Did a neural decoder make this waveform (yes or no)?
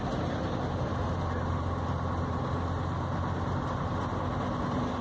no